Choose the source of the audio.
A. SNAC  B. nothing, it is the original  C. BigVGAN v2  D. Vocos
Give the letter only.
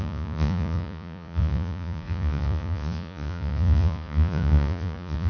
D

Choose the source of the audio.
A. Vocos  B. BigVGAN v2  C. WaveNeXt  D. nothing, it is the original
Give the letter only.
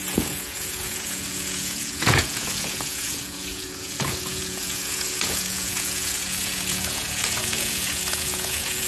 A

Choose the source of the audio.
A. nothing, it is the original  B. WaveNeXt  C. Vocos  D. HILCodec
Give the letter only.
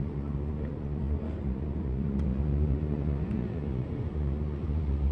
C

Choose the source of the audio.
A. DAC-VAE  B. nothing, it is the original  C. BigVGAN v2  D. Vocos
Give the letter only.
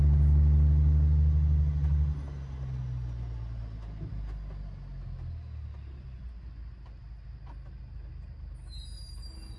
B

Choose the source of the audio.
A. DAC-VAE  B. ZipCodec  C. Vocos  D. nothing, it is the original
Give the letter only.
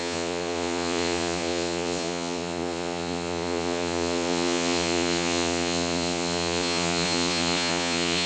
C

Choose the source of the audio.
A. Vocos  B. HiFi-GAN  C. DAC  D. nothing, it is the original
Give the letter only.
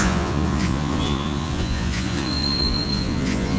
A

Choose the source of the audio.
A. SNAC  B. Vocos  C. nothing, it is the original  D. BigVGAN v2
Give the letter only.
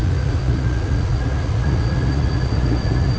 B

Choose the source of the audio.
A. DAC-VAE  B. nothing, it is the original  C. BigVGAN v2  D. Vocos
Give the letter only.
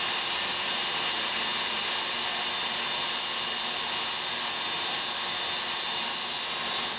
B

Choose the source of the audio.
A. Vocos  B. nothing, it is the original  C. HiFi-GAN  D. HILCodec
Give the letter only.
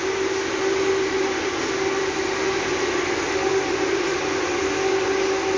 B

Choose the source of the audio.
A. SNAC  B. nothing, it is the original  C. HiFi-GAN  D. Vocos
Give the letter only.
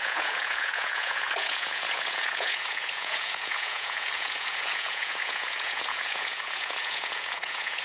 D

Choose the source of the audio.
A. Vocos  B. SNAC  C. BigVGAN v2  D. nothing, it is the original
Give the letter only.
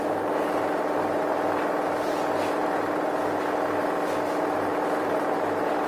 D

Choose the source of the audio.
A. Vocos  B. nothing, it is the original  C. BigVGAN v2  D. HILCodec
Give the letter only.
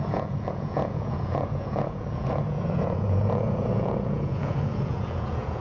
A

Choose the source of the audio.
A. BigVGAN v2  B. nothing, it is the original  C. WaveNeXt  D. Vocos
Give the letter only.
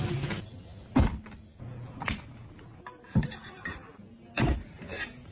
B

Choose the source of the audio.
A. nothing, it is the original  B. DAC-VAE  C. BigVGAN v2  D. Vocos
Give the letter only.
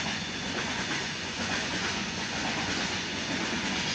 D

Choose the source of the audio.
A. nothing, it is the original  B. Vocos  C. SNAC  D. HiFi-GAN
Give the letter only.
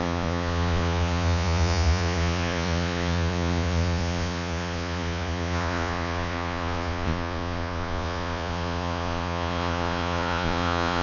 B